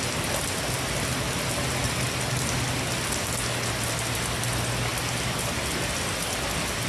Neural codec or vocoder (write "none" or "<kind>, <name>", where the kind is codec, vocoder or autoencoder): none